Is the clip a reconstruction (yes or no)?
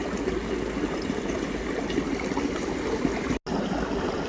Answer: no